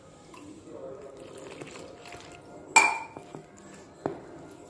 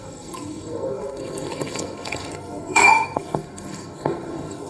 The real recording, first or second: first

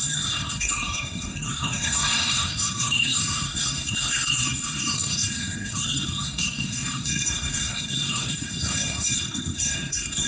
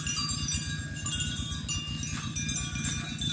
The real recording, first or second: second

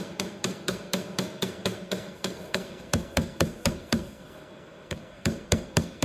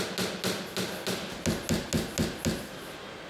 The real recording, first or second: second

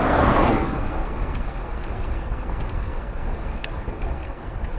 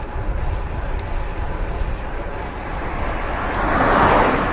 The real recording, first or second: second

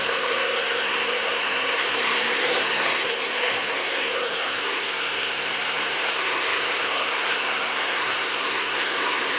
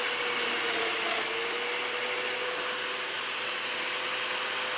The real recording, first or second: second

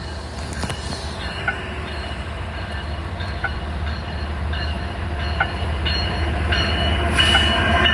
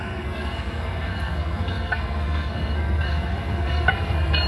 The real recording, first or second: first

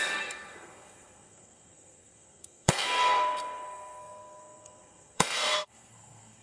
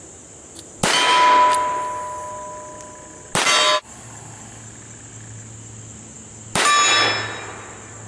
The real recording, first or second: second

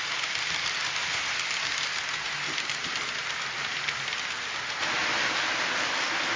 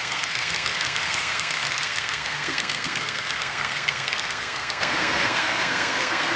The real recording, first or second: first